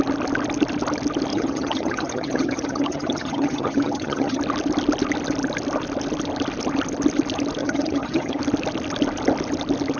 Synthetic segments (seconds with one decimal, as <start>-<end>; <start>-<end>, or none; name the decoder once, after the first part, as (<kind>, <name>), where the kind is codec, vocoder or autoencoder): 1.3-4.4 (vocoder, HiFi-GAN); 7.6-8.4